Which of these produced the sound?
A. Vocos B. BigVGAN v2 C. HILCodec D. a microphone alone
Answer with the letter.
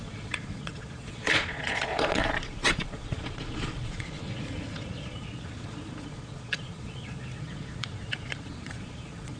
A